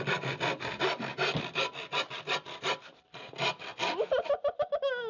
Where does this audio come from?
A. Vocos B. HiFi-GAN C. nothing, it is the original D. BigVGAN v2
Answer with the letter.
C